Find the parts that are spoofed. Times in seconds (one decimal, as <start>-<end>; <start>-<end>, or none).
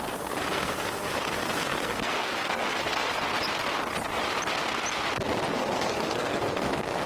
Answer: 0.0-3.1; 5.5-7.1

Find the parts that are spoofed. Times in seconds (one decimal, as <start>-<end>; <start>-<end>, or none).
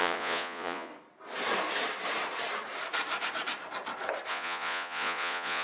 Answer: 0.0-0.9; 4.3-5.6